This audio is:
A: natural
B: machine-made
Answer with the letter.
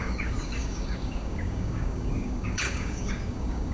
B